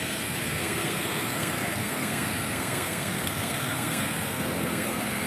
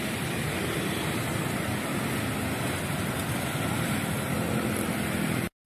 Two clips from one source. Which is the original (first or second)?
second